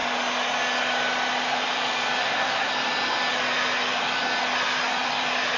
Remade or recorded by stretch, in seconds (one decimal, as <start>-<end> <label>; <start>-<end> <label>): 0.0-2.2 recorded; 2.2-2.7 remade; 2.7-5.6 recorded